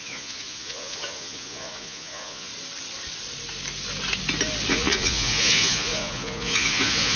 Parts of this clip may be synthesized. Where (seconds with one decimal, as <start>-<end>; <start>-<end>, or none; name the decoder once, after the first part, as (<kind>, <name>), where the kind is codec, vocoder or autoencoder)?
0.0-2.5 (vocoder, Vocos); 4.7-7.2